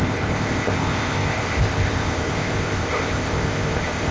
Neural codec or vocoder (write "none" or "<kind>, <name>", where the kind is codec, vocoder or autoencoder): codec, ZipCodec